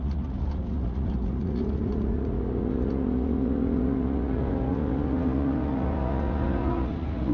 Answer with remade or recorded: remade